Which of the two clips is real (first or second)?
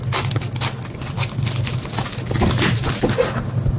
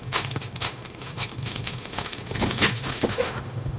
first